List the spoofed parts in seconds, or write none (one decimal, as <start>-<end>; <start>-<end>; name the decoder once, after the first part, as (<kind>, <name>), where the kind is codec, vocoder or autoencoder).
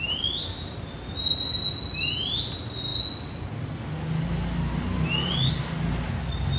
none